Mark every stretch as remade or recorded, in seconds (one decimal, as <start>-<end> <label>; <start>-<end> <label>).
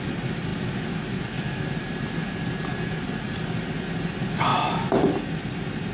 0.0-5.9 recorded